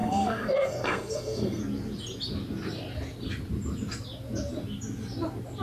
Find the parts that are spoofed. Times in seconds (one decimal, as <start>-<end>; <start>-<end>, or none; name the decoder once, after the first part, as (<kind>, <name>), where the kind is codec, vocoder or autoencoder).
0.0-1.6 (codec, SNAC)